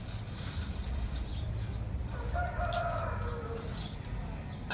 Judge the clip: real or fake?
fake